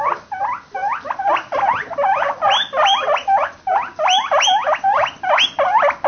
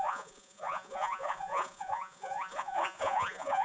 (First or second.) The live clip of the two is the first